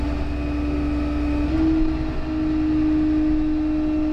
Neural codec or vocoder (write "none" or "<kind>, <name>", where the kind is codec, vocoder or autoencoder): none